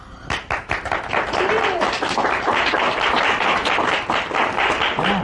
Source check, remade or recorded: recorded